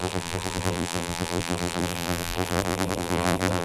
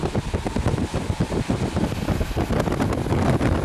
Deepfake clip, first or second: first